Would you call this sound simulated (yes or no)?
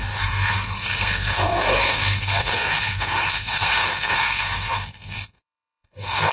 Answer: yes